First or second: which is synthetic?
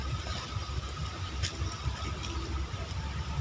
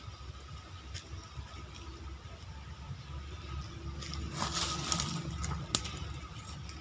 first